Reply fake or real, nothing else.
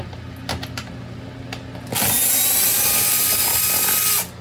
real